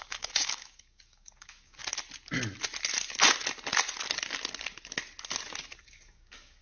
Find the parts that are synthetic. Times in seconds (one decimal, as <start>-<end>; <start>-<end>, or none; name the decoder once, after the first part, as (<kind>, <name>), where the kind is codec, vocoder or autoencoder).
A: 0.0-1.8 (codec, DAC); 5.8-6.6